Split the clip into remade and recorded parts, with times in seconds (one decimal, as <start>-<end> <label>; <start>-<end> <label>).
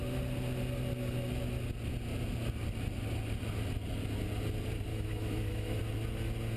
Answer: 0.0-4.9 recorded; 4.9-5.8 remade; 5.8-6.6 recorded